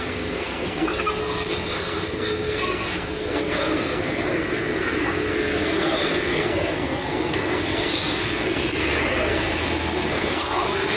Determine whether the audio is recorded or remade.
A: remade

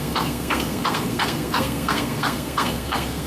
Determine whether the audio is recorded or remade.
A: remade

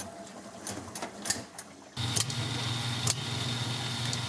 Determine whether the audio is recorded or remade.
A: recorded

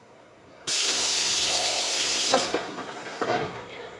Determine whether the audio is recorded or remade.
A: remade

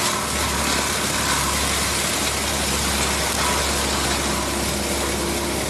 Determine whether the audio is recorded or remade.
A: recorded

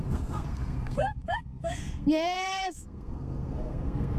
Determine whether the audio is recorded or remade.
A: remade